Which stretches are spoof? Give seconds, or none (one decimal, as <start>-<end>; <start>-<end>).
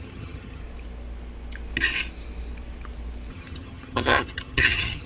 0.0-0.6; 3.3-5.1